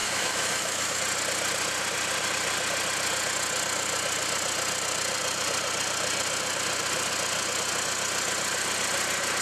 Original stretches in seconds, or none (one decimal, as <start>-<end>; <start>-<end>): 1.0-9.4